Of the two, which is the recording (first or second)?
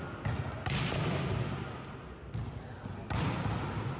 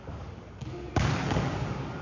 first